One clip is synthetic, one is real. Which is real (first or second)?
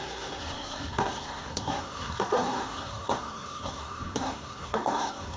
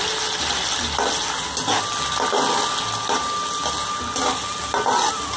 second